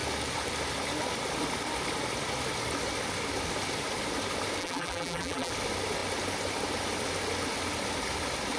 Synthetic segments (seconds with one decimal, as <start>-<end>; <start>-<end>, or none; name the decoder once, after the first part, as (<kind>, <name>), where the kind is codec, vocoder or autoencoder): 4.6-5.5 (vocoder, BigVGAN v2)